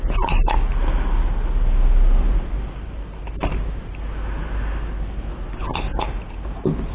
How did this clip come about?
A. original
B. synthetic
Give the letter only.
A